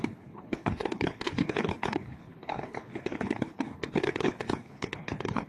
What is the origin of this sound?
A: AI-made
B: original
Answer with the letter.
A